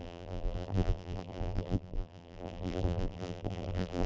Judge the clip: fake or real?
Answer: fake